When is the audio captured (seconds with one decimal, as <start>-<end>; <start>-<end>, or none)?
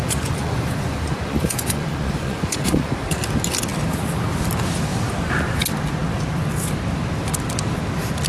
2.9-8.3